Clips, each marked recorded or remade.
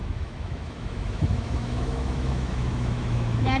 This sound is remade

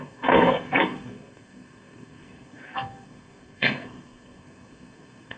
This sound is remade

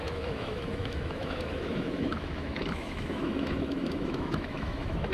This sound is remade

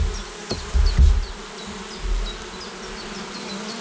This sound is recorded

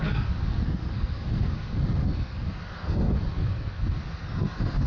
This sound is remade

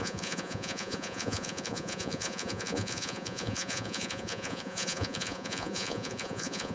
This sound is remade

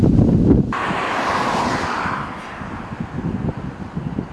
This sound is recorded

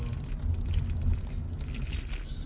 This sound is recorded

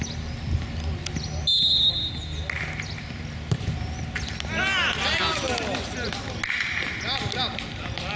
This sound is recorded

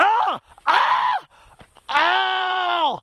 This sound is remade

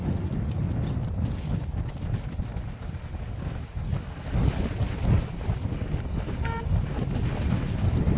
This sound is recorded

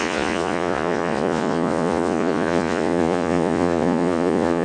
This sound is remade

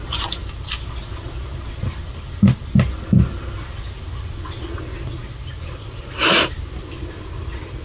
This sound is recorded